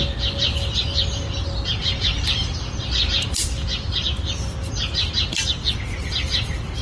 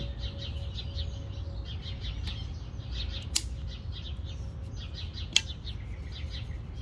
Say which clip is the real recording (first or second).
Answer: second